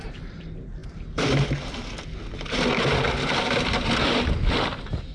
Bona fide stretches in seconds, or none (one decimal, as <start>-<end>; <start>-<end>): 0.0-5.1